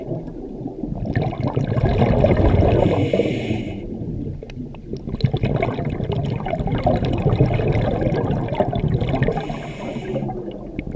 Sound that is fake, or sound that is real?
real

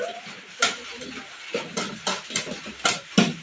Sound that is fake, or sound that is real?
real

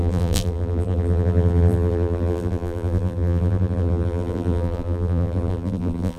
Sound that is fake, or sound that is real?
fake